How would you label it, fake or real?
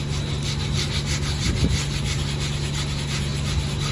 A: real